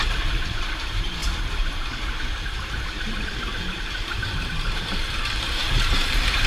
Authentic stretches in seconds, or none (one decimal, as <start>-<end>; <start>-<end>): none